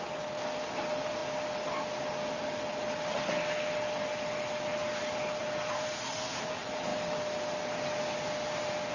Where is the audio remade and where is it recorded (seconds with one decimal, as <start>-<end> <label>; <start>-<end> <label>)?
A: 0.0-5.4 recorded; 5.4-6.1 remade; 6.1-8.9 recorded